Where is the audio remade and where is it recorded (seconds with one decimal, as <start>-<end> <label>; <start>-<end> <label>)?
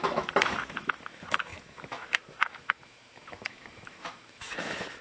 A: 0.0-5.0 remade